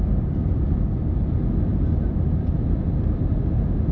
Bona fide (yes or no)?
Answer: yes